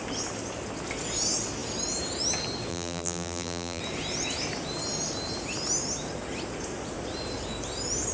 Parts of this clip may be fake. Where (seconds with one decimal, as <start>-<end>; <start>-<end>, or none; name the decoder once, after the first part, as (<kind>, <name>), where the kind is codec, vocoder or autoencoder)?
2.7-3.8 (vocoder, BigVGAN v2)